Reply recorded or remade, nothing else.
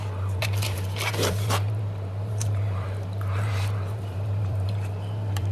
remade